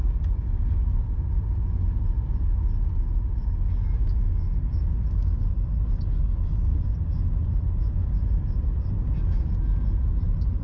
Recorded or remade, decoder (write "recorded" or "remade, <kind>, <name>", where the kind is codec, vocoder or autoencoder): recorded